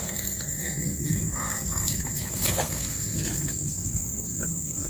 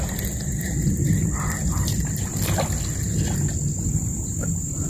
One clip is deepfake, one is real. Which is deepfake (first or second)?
first